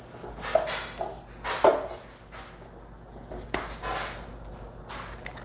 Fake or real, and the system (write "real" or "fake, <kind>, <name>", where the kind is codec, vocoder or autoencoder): real